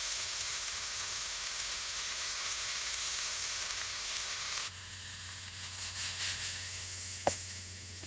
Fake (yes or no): yes